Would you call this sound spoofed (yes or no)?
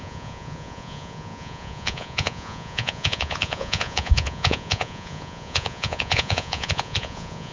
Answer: yes